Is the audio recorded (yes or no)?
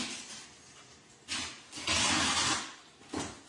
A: yes